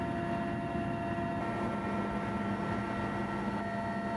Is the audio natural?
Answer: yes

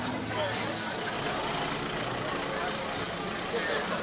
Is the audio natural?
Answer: yes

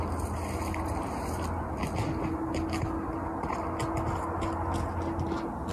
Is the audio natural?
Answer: yes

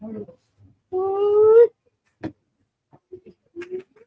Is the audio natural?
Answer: yes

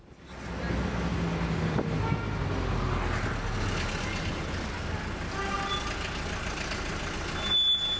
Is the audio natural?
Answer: yes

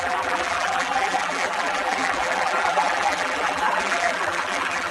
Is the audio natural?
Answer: no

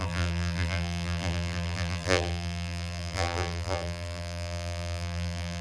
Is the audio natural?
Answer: no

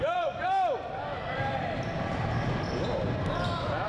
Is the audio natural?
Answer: no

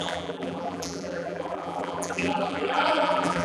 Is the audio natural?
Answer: no